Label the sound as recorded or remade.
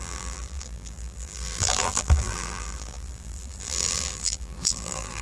remade